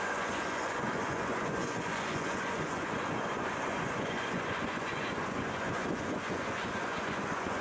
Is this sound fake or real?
fake